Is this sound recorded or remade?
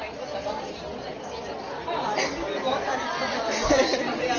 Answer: recorded